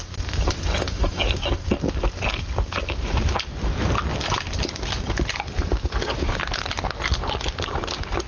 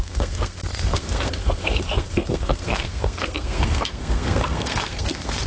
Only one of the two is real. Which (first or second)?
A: first